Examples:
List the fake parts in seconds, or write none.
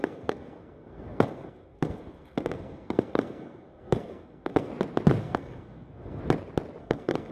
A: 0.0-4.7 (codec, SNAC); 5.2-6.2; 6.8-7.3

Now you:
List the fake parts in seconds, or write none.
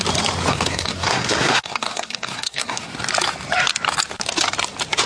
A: 0.5-2.9 (codec, SNAC)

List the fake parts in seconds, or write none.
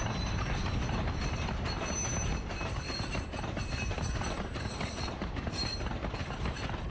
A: none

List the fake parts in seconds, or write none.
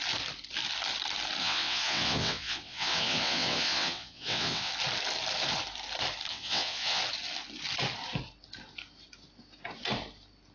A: 1.4-4.7 (vocoder, WaveNeXt); 6.3-7.0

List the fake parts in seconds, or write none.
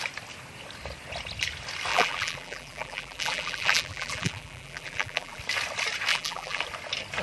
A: 1.9-5.4 (vocoder, BigVGAN v2); 6.1-6.6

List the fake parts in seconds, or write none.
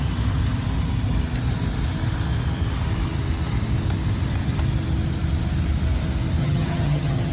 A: 6.4-7.3 (vocoder, HiFi-GAN)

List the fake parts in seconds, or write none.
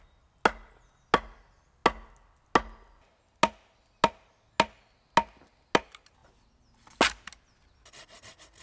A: none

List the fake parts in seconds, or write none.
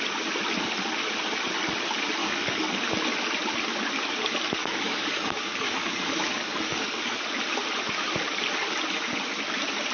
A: 2.2-2.7 (codec, DAC); 4.6-7.2